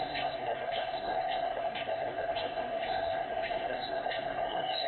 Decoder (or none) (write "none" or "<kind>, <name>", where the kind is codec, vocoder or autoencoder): codec, SNAC